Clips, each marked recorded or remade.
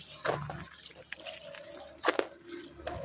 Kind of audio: recorded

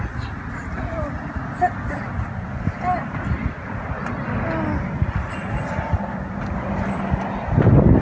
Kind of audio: recorded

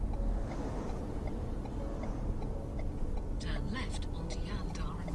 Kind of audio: recorded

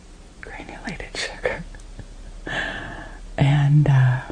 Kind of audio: recorded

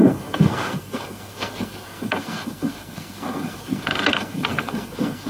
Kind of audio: remade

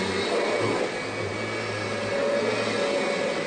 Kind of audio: recorded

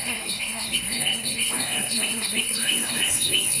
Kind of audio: remade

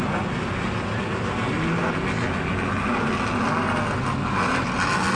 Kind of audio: recorded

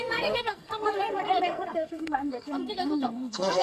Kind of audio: remade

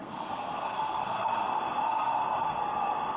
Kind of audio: remade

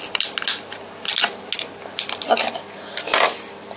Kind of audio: recorded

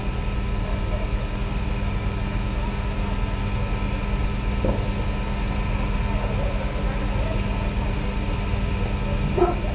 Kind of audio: recorded